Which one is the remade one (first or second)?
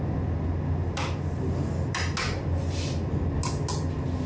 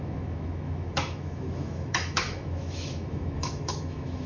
second